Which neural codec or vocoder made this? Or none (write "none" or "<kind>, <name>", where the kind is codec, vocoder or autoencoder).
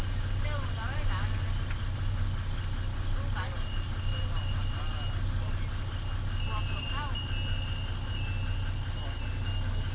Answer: none